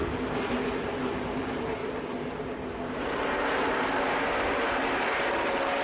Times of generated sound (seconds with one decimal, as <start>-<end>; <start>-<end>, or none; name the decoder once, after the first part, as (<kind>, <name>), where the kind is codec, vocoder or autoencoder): 0.5-1.8 (vocoder, BigVGAN v2); 5.3-5.8